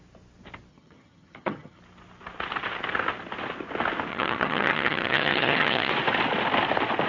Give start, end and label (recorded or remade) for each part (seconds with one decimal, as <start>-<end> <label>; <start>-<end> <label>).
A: 0.0-0.7 recorded; 0.7-1.8 remade; 1.8-4.1 recorded; 4.1-5.9 remade; 5.9-7.1 recorded